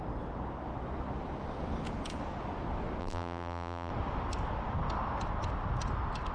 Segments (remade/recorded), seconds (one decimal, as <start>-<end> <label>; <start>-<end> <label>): 0.0-3.0 recorded; 3.0-3.9 remade; 3.9-6.3 recorded